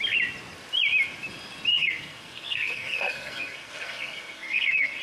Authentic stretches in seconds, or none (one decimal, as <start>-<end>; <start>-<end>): 0.0-1.7